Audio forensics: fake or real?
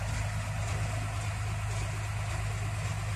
real